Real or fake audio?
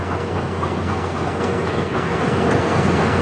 fake